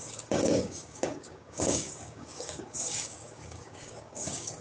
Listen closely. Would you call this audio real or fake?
fake